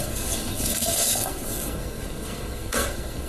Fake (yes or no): yes